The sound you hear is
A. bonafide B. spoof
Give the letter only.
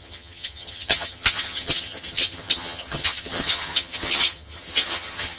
B